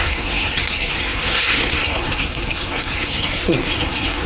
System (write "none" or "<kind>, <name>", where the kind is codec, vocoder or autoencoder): codec, SNAC